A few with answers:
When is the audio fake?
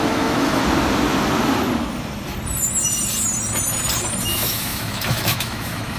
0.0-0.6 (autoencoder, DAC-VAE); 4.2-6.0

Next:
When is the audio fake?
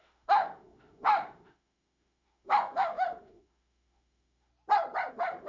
0.0-4.5 (autoencoder, DAC-VAE); 5.1-5.5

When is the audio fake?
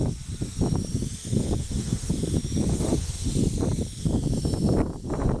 1.6-2.1 (autoencoder, DAC-VAE); 2.7-3.3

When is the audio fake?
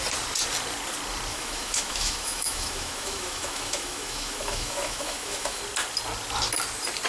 1.3-5.6 (autoencoder, DAC-VAE)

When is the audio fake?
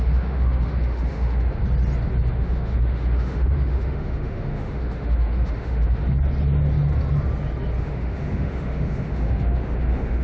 0.0-1.6 (autoencoder, DAC-VAE); 2.3-6.0; 7.8-10.2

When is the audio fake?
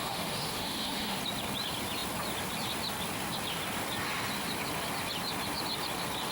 0.0-1.2 (autoencoder, DAC-VAE)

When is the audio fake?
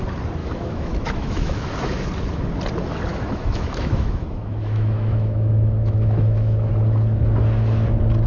0.4-2.1 (autoencoder, DAC-VAE); 3.1-6.7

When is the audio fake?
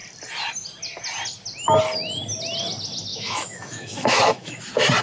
3.1-4.6 (autoencoder, DAC-VAE)